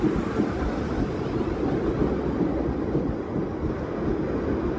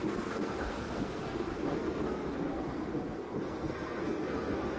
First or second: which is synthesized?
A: second